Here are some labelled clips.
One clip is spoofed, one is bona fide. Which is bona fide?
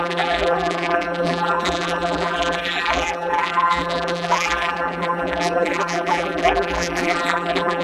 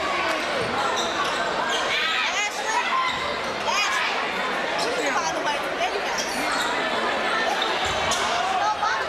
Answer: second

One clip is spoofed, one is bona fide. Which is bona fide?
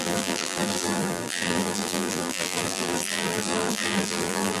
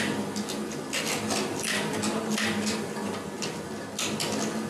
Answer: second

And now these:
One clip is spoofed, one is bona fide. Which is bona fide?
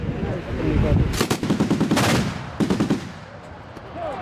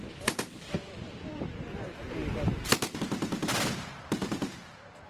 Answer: first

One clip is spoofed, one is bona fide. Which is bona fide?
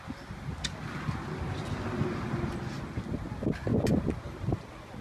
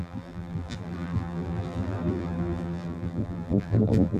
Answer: first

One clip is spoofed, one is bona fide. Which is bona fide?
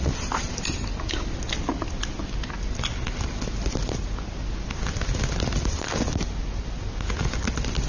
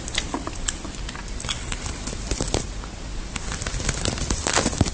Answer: first